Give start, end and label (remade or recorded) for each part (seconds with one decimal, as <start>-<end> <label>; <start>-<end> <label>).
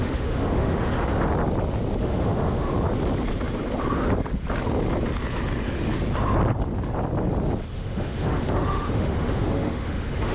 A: 0.0-0.9 remade; 0.9-2.0 recorded; 2.0-2.7 remade; 2.7-7.7 recorded; 7.7-10.3 remade